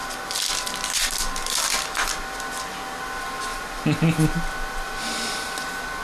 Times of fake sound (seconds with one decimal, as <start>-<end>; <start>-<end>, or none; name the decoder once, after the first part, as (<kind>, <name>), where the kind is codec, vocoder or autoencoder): none